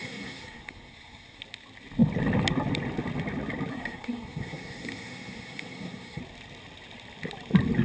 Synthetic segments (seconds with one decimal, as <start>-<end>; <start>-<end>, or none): 0.0-1.4; 3.7-6.2